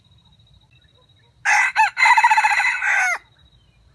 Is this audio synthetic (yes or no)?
no